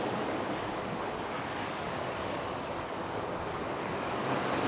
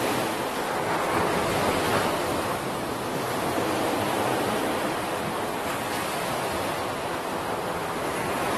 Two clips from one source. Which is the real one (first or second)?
second